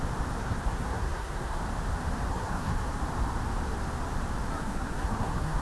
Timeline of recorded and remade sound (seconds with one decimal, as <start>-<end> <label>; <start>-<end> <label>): 0.0-0.4 recorded; 0.4-1.6 remade; 1.6-2.3 recorded; 2.3-3.0 remade; 3.0-4.5 recorded; 4.5-5.6 remade